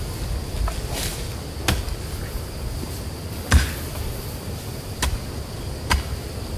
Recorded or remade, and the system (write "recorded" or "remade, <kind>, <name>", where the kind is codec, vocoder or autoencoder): recorded